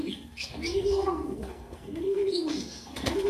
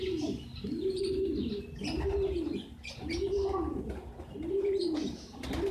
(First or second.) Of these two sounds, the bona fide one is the second